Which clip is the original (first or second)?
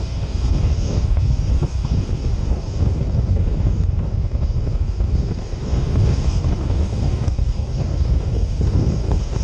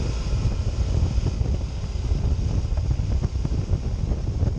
second